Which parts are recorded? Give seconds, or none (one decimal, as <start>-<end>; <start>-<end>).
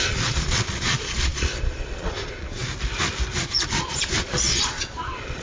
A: 2.6-3.4